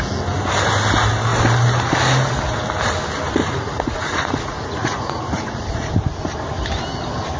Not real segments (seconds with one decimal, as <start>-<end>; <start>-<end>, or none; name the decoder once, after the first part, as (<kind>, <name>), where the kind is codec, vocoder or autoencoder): 3.4-5.9 (vocoder, Vocos)